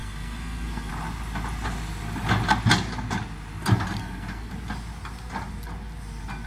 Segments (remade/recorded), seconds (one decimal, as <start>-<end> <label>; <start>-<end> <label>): 0.0-0.9 remade; 0.9-4.0 recorded; 4.0-4.5 remade; 4.5-6.5 recorded